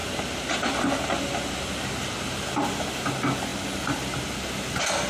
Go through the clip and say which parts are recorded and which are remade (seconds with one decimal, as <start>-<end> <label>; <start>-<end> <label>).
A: 0.0-5.1 recorded